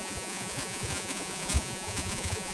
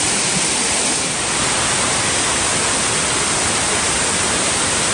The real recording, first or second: second